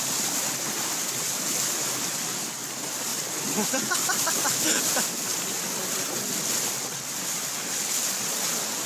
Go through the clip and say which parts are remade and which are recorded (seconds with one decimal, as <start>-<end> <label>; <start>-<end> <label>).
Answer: 0.0-8.9 recorded